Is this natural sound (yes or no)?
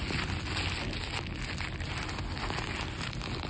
yes